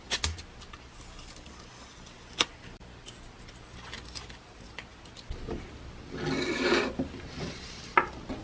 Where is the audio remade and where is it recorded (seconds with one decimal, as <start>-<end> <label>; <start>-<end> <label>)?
0.0-8.4 recorded